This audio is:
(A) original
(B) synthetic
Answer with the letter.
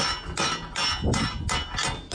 A